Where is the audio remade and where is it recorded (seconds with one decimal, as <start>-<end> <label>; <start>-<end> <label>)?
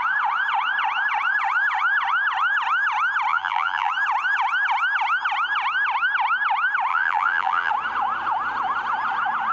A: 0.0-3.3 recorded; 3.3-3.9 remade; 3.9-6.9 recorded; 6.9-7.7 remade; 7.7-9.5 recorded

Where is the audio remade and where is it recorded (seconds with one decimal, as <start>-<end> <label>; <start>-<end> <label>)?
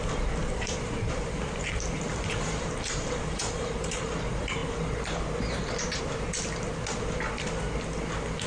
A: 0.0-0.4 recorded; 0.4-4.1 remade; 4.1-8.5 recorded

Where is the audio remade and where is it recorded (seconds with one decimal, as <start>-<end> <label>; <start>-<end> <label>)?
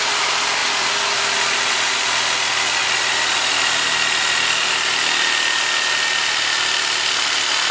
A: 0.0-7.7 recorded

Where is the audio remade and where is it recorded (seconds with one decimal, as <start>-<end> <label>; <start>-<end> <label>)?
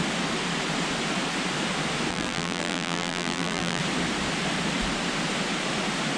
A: 0.0-2.1 recorded; 2.1-3.8 remade; 3.8-6.2 recorded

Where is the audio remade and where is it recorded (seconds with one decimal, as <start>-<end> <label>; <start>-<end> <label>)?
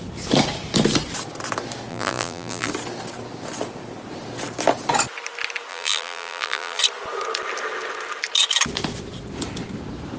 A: 0.0-1.9 recorded; 1.9-2.7 remade; 2.7-5.7 recorded; 5.7-6.8 remade; 6.8-10.2 recorded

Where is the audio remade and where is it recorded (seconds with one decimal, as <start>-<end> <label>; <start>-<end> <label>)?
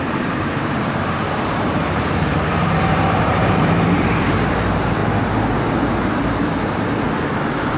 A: 0.0-5.0 remade; 5.0-7.8 recorded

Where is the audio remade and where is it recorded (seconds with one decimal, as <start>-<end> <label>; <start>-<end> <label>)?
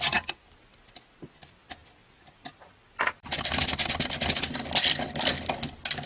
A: 0.0-6.1 recorded